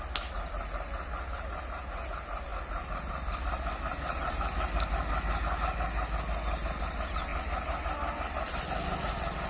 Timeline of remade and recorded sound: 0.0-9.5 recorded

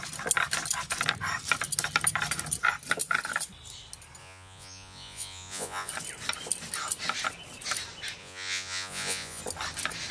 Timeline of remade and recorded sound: 0.0-4.2 recorded; 4.2-5.9 remade; 5.9-8.2 recorded; 8.2-9.4 remade; 9.4-10.1 recorded

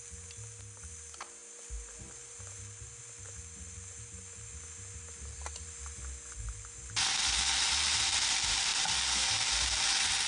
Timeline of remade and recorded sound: 0.0-10.3 recorded

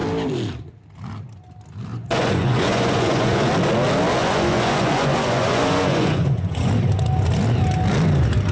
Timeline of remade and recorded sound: 0.0-1.9 recorded; 1.9-3.5 remade; 3.5-4.2 recorded; 4.2-6.7 remade; 6.7-8.5 recorded

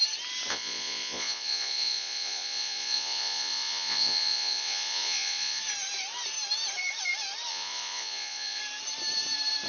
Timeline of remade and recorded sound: 0.0-0.5 recorded; 0.5-5.6 remade; 5.6-7.5 recorded; 7.5-8.6 remade; 8.6-9.7 recorded

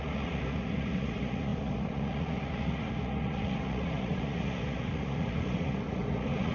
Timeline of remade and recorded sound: 0.0-6.5 remade